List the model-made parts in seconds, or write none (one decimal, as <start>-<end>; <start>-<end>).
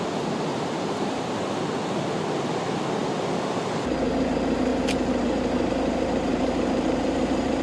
0.5-1.7; 6.3-7.6